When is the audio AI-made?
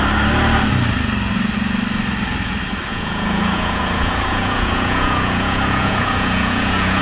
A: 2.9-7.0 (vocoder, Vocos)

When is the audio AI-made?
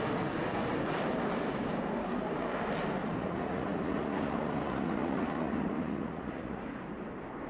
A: 3.2-6.6 (vocoder, Vocos)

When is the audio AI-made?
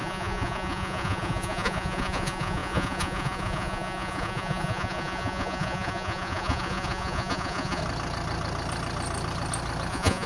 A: 0.0-7.8 (vocoder, Vocos); 9.9-10.3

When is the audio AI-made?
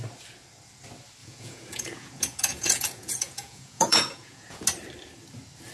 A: 1.2-4.6 (vocoder, Vocos)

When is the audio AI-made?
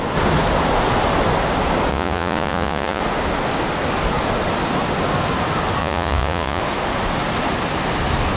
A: 1.9-3.0 (vocoder, Vocos); 5.8-6.6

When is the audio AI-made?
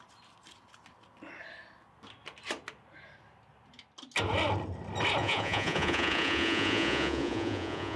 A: 5.2-8.0 (vocoder, Vocos)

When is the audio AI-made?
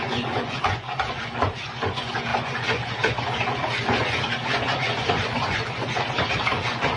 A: 0.0-7.0 (vocoder, Vocos)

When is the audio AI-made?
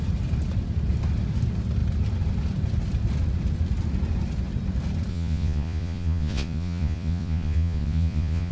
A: 5.1-8.5 (vocoder, Vocos)